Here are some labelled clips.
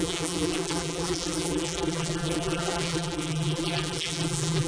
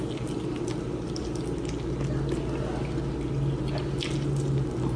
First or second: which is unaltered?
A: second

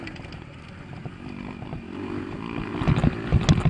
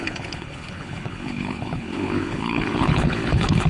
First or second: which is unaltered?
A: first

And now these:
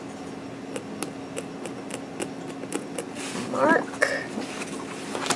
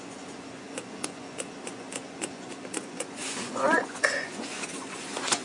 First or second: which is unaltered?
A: first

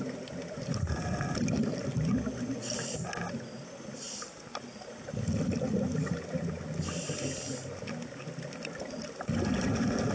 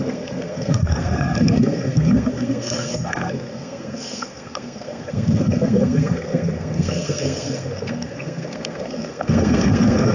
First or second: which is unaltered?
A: first